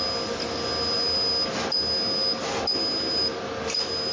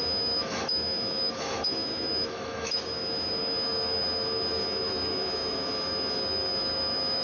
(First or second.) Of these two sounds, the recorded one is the first